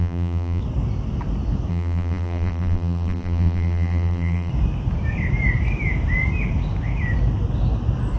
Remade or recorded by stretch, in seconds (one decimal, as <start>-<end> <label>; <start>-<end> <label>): 0.0-0.6 remade; 0.6-1.7 recorded; 1.7-4.5 remade; 4.5-8.2 recorded